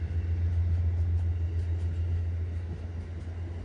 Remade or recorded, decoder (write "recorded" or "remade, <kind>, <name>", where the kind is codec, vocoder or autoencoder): recorded